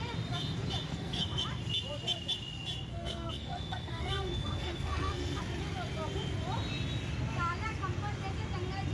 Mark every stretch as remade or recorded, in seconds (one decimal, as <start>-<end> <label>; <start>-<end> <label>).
0.0-0.9 recorded; 0.9-1.4 remade; 1.4-2.9 recorded; 2.9-5.4 remade; 5.4-8.9 recorded